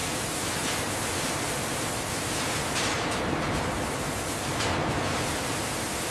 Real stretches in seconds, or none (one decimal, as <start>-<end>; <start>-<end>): 0.0-6.1